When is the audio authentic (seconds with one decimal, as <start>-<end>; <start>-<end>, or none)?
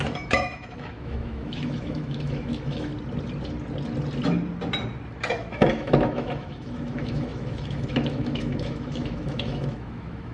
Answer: 2.9-5.3